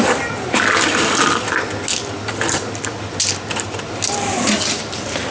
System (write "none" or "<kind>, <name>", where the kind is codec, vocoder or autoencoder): none